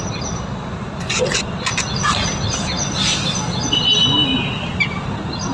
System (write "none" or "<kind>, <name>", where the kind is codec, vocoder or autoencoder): none